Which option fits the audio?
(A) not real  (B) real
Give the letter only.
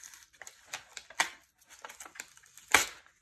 B